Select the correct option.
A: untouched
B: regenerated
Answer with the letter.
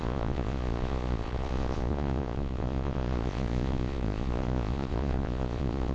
B